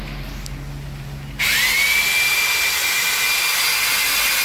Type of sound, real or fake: real